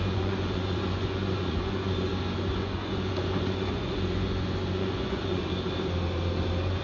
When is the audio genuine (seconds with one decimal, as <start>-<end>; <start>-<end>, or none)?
2.1-2.6; 5.4-6.8